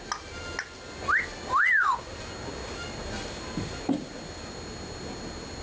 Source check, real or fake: real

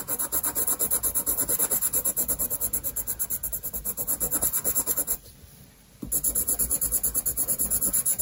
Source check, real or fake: real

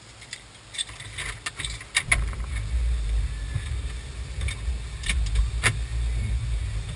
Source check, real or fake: real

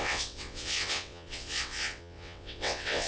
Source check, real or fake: fake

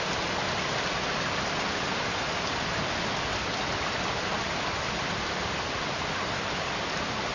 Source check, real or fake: real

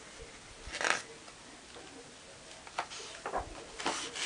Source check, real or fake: real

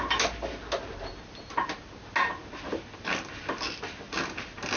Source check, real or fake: real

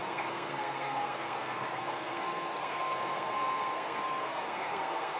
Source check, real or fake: fake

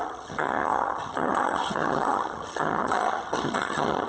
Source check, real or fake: fake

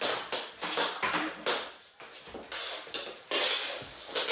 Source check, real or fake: real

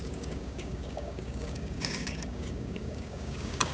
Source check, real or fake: fake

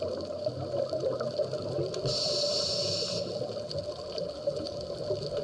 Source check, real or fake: real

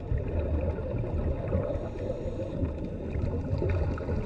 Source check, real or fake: real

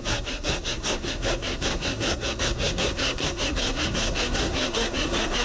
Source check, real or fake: fake